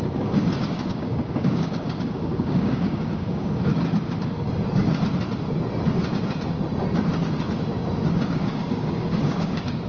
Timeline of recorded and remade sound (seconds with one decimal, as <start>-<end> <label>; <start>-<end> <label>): 0.0-3.7 remade; 3.7-8.2 recorded; 8.2-9.9 remade